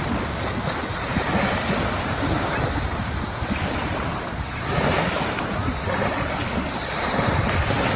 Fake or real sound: real